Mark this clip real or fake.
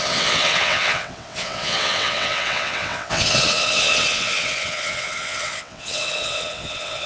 fake